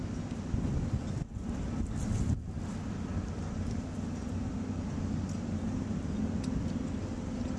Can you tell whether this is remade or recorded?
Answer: recorded